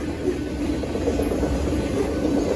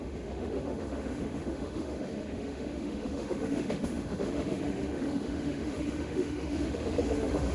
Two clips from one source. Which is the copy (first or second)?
second